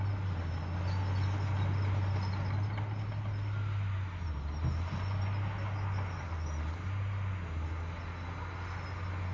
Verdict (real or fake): real